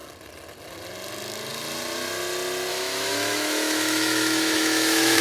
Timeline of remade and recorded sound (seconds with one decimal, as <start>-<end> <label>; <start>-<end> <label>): 0.0-2.7 recorded; 2.7-5.2 remade